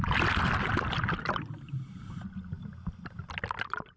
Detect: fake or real real